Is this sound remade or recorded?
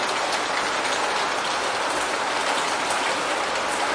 recorded